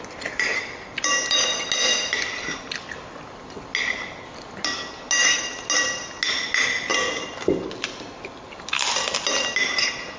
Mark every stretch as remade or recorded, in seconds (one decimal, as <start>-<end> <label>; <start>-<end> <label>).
0.0-10.2 recorded

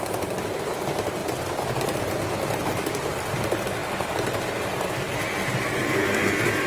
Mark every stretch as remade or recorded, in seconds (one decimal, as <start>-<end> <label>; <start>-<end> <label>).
0.0-6.7 recorded

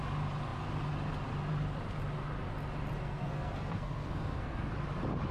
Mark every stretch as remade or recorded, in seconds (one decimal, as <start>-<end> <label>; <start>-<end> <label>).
0.0-3.0 recorded; 3.0-4.7 remade; 4.7-5.3 recorded

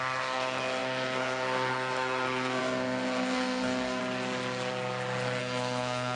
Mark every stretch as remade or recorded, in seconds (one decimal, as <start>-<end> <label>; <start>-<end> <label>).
0.0-4.0 remade; 4.0-5.4 recorded; 5.4-6.2 remade

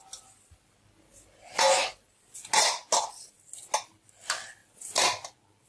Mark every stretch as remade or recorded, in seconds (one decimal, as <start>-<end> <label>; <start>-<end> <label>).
0.0-5.7 recorded